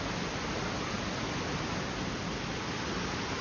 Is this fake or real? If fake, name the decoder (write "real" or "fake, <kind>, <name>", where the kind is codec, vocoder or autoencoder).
real